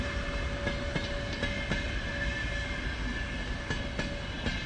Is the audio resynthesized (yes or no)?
no